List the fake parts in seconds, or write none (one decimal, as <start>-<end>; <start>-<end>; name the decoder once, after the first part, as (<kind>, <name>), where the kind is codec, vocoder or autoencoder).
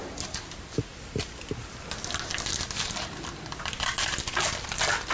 none